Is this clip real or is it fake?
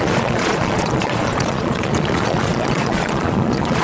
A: fake